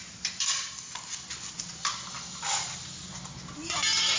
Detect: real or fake real